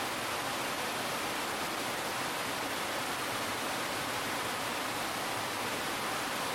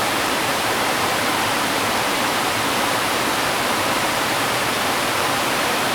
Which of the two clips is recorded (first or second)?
first